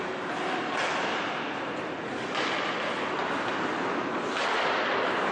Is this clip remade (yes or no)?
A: no